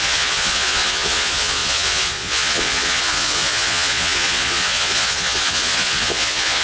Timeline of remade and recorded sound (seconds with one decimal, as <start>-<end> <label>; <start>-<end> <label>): 0.0-6.6 remade